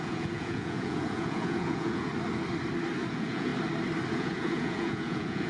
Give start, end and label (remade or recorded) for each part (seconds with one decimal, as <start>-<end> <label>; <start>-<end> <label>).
0.0-2.1 remade; 2.1-3.1 recorded; 3.1-3.5 remade; 3.5-4.1 recorded; 4.1-5.5 remade